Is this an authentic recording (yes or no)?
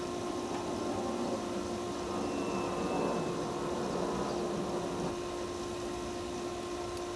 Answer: yes